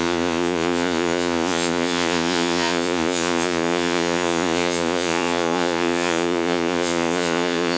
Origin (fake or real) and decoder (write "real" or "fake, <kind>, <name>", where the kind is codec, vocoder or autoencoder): fake, vocoder, Vocos